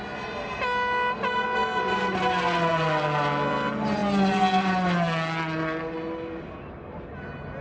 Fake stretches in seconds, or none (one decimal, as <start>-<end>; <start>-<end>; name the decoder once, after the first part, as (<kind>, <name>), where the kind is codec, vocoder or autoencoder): none